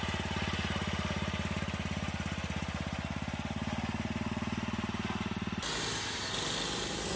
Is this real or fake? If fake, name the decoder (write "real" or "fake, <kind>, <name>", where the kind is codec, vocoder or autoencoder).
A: real